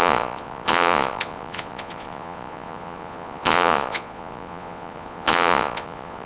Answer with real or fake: fake